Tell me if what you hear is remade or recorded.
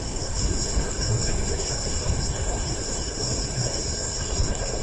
remade